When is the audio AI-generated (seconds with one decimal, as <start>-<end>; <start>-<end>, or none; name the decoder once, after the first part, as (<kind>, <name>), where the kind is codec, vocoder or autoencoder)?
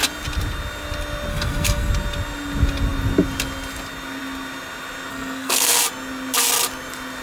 1.3-1.9 (codec, SNAC); 5.1-5.8